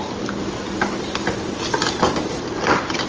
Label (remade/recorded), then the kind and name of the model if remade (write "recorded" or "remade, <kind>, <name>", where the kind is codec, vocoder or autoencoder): recorded